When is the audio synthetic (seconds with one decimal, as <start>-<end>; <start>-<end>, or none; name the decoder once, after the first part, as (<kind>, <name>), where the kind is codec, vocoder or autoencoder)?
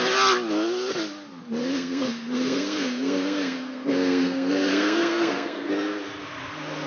1.6-5.7 (codec, SNAC)